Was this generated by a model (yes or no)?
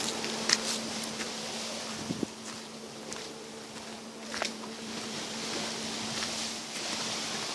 no